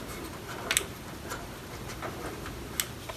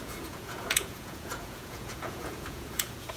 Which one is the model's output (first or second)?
second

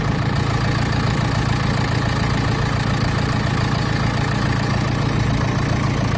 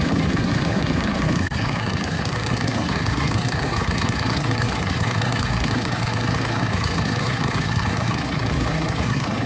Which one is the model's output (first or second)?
second